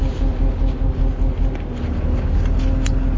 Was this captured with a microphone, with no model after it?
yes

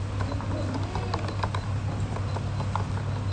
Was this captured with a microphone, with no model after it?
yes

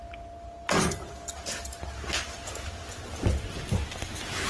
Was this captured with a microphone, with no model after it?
yes